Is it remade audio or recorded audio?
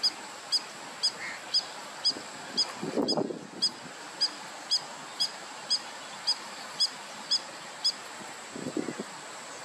recorded